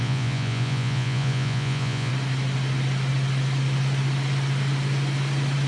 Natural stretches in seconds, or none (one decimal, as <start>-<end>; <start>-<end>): 2.1-5.7